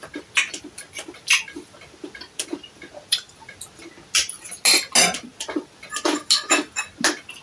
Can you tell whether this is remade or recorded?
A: recorded